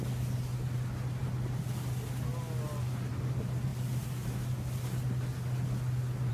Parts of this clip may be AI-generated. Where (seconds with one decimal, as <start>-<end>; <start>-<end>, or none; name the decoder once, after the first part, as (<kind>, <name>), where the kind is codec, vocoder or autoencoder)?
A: none